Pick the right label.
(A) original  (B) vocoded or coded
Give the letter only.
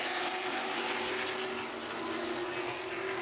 A